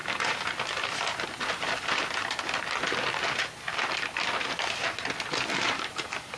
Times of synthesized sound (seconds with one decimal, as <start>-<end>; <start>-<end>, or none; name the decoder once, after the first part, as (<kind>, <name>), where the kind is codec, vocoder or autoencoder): 0.0-2.3 (vocoder, BigVGAN v2); 5.5-6.4